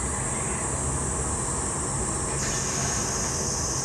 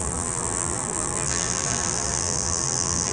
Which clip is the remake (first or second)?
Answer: second